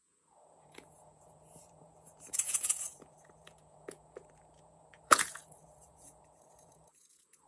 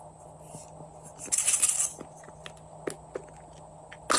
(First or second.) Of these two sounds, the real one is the second